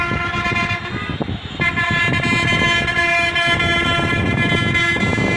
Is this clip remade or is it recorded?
recorded